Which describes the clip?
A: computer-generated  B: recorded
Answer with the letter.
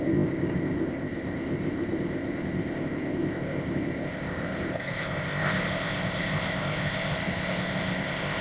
A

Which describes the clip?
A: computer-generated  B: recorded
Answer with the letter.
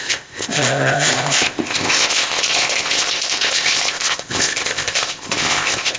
A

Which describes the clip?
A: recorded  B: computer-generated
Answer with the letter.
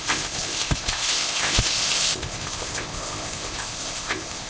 B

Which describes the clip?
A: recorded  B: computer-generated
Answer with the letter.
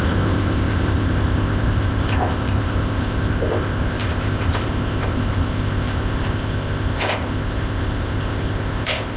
B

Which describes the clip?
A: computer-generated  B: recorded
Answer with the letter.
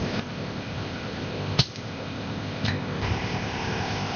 A